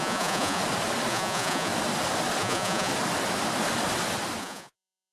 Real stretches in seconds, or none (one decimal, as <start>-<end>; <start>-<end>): 0.6-1.1; 1.7-2.4; 2.9-4.4